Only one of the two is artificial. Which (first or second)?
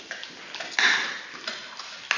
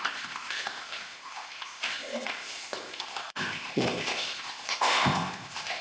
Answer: second